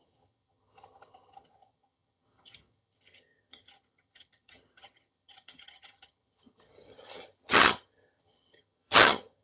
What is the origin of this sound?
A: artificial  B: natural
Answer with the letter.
A